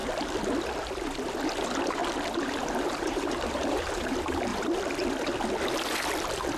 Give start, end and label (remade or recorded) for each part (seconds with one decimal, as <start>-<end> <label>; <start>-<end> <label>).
0.0-1.6 recorded; 1.6-2.0 remade; 2.0-2.7 recorded; 2.7-4.5 remade; 4.5-6.6 recorded